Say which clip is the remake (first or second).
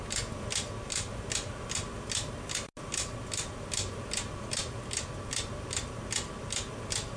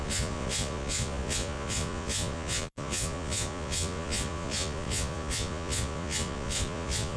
second